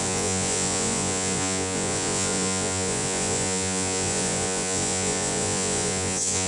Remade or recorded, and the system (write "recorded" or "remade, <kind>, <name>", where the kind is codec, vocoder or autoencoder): remade, vocoder, Vocos